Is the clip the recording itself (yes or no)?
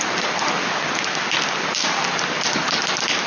yes